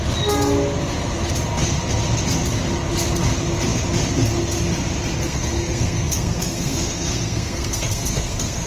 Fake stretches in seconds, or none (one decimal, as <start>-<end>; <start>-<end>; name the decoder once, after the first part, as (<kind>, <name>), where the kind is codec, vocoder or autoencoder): 5.2-8.7 (codec, SNAC)